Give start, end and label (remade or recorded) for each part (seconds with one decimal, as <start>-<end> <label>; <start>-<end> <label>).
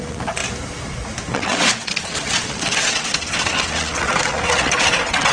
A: 0.0-0.4 remade; 0.4-1.3 recorded; 1.3-5.3 remade